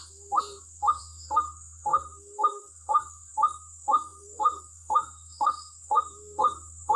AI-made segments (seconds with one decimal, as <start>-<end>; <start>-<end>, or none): 0.0-7.0